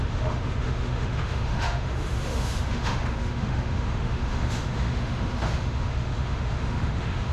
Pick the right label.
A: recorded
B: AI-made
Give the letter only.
B